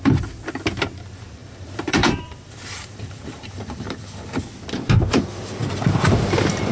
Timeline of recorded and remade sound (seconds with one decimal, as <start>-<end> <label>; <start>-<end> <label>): 0.0-1.4 recorded; 1.4-4.2 remade; 4.2-6.7 recorded